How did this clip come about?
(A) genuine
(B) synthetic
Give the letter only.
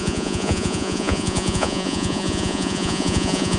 B